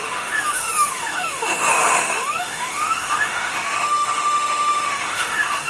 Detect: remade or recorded remade